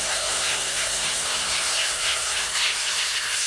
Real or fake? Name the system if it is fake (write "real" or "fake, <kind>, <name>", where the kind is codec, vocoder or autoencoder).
fake, codec, SNAC